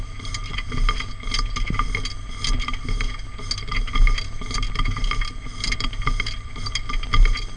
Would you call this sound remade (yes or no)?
no